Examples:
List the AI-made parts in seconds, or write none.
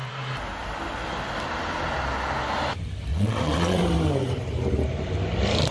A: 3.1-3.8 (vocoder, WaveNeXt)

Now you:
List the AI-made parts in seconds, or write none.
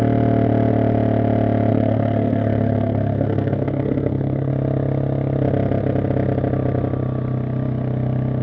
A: 1.7-4.5 (codec, SNAC)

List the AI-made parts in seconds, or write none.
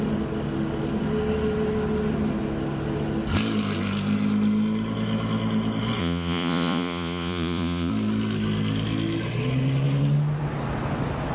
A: 6.0-7.9 (vocoder, Vocos)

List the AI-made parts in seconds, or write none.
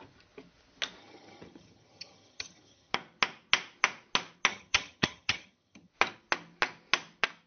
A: 1.0-2.9 (vocoder, HiFi-GAN); 4.5-5.9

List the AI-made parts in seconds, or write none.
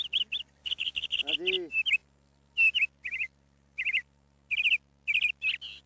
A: 0.6-1.3 (autoencoder, DAC-VAE)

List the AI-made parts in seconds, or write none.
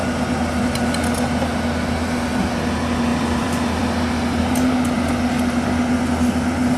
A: 3.1-4.4 (vocoder, BigVGAN v2)